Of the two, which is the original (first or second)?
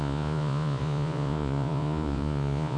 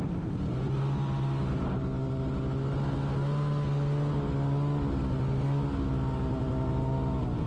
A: second